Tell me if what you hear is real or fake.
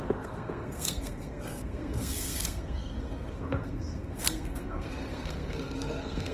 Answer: fake